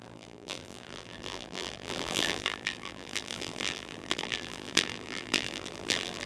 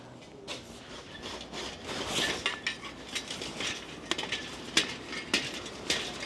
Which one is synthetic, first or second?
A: first